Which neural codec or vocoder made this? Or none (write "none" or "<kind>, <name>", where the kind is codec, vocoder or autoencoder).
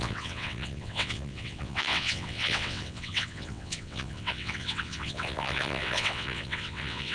vocoder, WaveNeXt